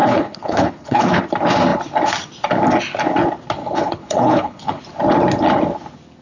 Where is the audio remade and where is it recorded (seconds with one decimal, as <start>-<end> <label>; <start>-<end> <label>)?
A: 0.0-1.2 remade; 1.2-3.6 recorded; 3.6-4.8 remade; 4.8-6.2 recorded